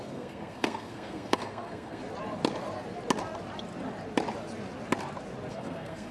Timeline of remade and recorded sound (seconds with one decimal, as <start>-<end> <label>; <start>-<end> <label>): 0.0-2.0 remade; 2.0-5.5 recorded; 5.5-6.1 remade